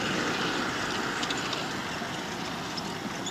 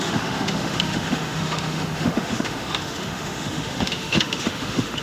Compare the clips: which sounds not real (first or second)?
second